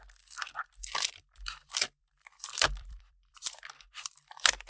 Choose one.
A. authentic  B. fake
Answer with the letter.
B